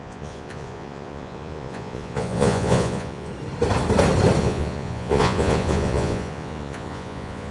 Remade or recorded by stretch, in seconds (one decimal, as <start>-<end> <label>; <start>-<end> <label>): 0.0-3.3 remade; 3.3-4.4 recorded; 4.4-7.5 remade